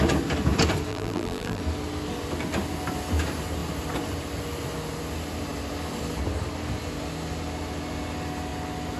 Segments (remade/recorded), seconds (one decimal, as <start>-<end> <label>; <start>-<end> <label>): 0.0-0.9 recorded; 0.9-1.6 remade; 1.6-9.0 recorded